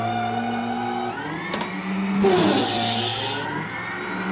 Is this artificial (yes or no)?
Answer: no